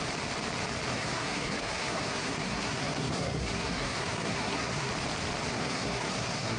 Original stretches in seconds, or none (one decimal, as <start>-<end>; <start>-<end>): 0.0-0.9; 4.9-5.5